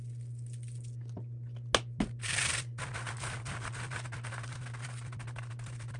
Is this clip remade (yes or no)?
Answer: no